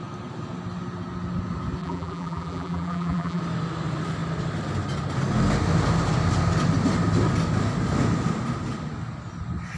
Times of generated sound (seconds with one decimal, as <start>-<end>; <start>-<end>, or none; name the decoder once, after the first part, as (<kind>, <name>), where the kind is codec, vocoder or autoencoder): 1.8-3.4 (vocoder, BigVGAN v2)